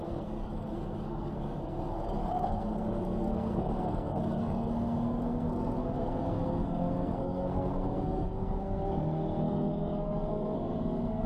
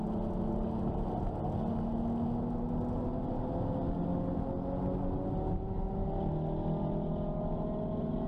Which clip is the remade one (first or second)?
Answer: first